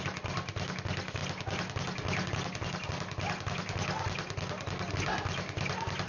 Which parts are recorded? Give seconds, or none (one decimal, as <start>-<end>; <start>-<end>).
0.0-6.1